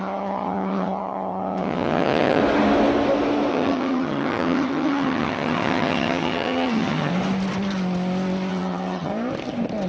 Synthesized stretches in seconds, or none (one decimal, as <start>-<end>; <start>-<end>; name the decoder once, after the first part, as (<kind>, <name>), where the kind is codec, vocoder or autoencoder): 0.0-2.4 (vocoder, HiFi-GAN); 3.5-7.1; 8.5-9.1